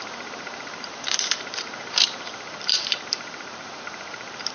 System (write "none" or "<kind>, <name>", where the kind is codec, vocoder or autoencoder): vocoder, BigVGAN v2